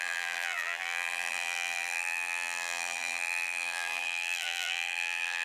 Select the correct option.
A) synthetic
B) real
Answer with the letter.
A